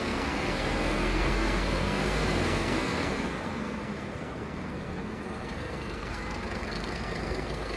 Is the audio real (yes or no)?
no